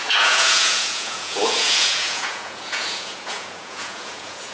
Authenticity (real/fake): fake